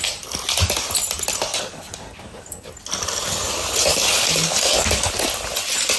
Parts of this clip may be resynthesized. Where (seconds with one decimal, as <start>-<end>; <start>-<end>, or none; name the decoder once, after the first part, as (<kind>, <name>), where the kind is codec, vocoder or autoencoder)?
1.5-2.7 (codec, DAC); 3.9-5.1